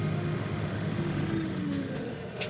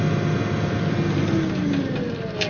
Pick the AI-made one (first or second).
first